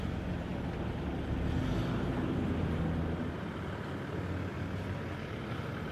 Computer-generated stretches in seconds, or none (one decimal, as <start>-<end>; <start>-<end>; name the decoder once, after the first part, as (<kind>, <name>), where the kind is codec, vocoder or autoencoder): none